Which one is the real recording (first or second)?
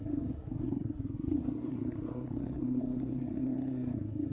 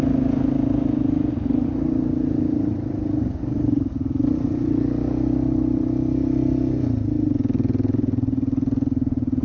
second